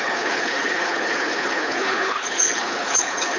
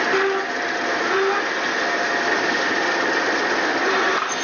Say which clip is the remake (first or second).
first